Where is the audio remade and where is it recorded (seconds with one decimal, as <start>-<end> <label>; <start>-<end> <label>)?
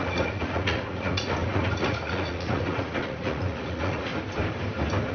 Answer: 0.0-4.1 remade; 4.1-5.1 recorded